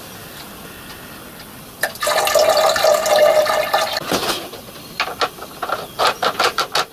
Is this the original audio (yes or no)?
yes